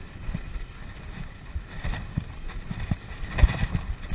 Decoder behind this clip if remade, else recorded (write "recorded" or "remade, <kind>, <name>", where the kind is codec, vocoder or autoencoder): recorded